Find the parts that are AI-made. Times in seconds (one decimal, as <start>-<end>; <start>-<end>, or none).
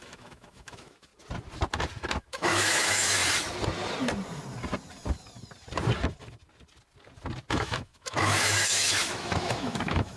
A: 0.0-1.1; 2.2-3.2; 7.5-10.2